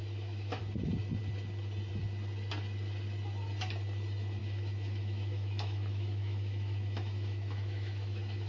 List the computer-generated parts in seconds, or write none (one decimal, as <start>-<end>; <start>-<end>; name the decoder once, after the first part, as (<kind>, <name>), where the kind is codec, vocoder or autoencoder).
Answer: 0.0-0.6 (autoencoder, DAC-VAE); 4.4-8.5